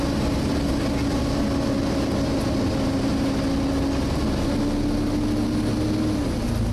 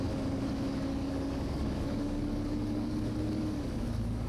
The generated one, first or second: second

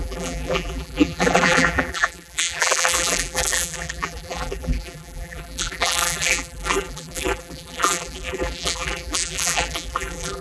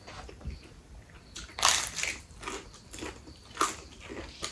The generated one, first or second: first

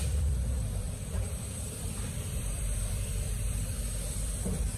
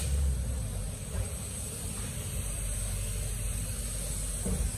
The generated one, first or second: first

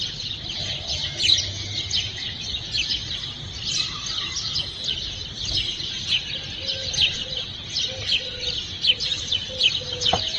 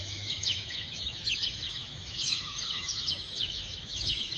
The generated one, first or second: second